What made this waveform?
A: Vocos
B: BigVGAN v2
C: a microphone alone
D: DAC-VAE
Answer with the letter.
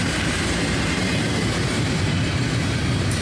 B